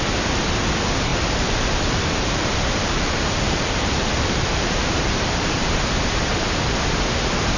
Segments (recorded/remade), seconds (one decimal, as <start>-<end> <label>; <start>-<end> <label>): 0.0-1.1 recorded; 1.1-5.7 remade; 5.7-7.6 recorded